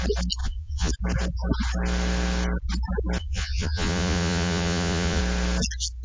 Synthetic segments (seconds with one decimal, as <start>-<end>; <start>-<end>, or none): 0.4-0.9; 3.2-5.2